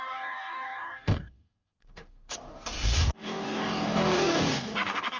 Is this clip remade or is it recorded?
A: remade